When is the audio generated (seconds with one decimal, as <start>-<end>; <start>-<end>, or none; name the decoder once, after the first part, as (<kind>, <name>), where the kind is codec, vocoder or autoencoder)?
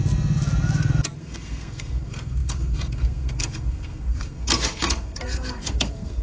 1.2-6.2 (codec, SNAC)